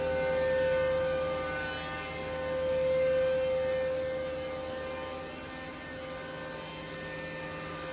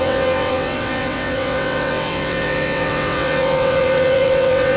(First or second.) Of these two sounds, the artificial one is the second